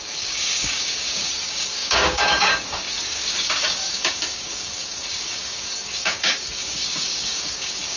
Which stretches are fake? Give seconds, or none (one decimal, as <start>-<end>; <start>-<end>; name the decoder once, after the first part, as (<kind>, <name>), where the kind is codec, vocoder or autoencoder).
0.0-8.0 (codec, DAC)